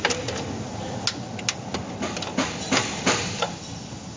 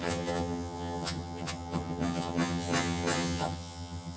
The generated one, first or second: second